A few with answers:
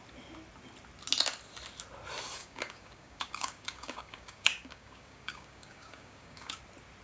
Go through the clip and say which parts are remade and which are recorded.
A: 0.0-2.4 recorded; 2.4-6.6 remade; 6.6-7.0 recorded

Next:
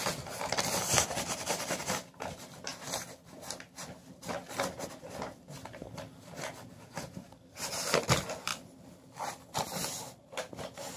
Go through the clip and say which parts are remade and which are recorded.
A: 0.0-11.0 recorded

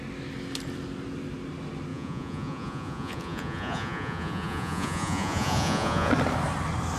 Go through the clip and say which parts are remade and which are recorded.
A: 0.0-1.9 recorded; 1.9-6.1 remade; 6.1-7.0 recorded

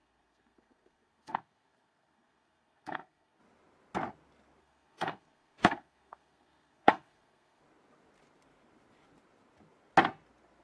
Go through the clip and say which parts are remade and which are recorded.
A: 0.0-3.4 remade; 3.4-4.6 recorded; 4.6-7.6 remade; 7.6-10.6 recorded

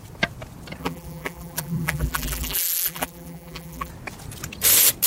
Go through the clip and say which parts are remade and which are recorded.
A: 0.0-0.8 recorded; 0.8-3.9 remade; 3.9-5.1 recorded